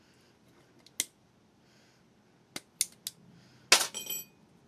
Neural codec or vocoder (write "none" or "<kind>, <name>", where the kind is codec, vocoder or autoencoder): none